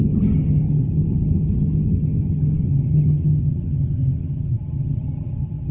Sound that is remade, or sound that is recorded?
remade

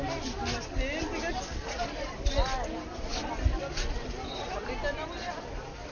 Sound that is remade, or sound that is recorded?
recorded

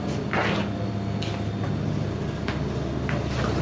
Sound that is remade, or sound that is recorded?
recorded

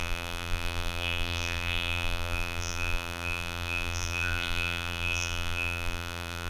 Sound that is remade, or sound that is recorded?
remade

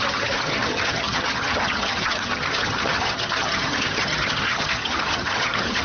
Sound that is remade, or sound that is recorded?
remade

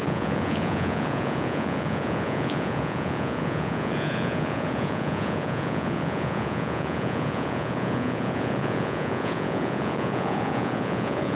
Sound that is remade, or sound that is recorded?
remade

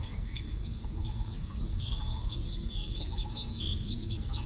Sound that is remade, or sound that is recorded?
remade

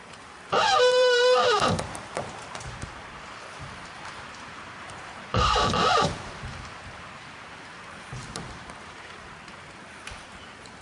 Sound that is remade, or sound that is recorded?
remade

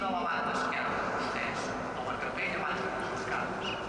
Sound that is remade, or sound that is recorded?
recorded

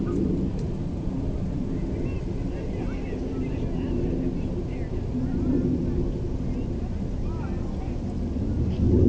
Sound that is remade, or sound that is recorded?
recorded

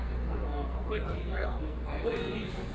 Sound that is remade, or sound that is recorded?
remade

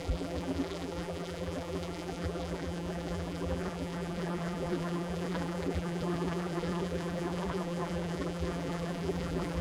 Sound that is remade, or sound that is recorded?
remade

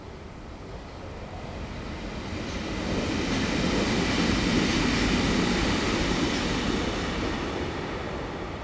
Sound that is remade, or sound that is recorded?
recorded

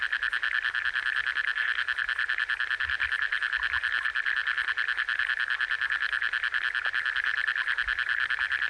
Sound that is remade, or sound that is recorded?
recorded